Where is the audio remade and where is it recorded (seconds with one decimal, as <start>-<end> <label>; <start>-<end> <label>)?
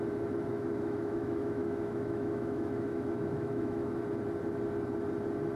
0.0-0.5 recorded; 0.5-3.9 remade; 3.9-5.6 recorded